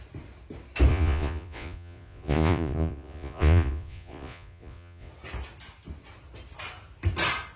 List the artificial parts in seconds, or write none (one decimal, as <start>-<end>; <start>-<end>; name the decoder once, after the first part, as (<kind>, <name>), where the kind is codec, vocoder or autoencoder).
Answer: 0.9-5.1 (vocoder, Vocos)